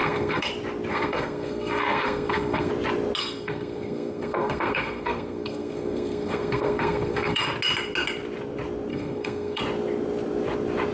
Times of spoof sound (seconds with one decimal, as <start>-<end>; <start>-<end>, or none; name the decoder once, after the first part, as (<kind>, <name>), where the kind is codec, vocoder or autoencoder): 0.0-0.5 (codec, SNAC); 0.9-2.7; 3.2-7.4; 8.9-9.6